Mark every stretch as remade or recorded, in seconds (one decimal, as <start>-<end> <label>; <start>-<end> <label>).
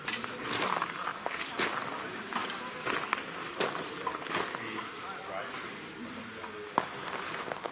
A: 0.0-7.7 recorded